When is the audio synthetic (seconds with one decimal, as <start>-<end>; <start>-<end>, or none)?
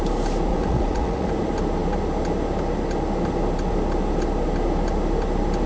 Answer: 0.5-1.3